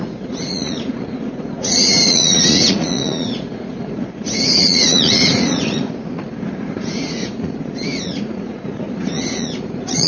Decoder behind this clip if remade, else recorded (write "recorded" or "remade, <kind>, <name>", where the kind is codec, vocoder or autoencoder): remade, vocoder, Vocos